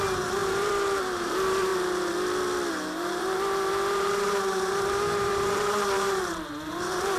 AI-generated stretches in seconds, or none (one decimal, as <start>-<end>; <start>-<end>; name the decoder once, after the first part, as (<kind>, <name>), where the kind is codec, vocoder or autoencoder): 0.0-1.7 (vocoder, BigVGAN v2); 2.7-7.2